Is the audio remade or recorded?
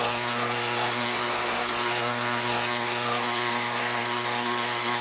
remade